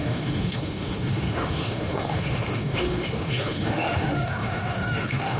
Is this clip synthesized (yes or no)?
yes